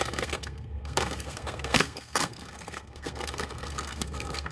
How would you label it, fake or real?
fake